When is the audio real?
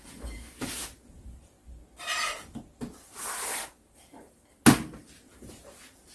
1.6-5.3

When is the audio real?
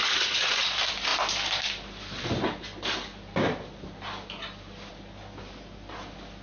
0.7-6.4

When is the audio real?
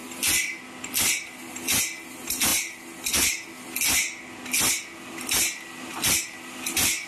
0.0-7.1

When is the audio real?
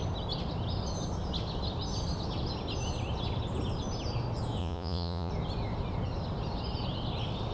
0.0-4.6; 5.3-7.5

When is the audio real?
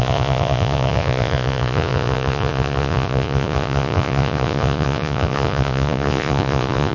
none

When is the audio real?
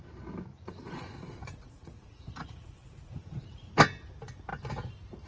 0.0-0.5; 3.7-5.3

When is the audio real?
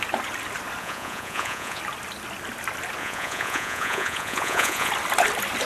0.0-0.8; 1.8-3.0; 4.9-5.7